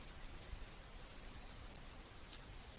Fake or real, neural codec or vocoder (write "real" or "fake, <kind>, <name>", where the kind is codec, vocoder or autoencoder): real